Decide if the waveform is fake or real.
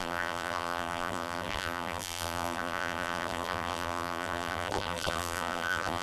fake